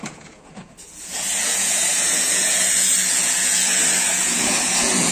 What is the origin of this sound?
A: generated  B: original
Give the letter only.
A